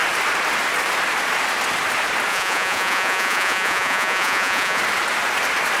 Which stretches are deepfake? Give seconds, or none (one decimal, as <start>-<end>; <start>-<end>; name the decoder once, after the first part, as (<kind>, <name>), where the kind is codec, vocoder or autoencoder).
2.3-4.8 (vocoder, Vocos)